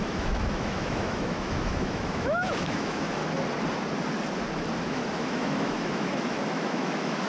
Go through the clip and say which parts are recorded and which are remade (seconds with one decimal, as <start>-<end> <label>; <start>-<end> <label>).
0.0-3.2 remade; 3.2-4.8 recorded; 4.8-7.3 remade